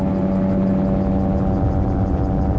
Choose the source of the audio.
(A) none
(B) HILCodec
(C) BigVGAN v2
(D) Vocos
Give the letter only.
A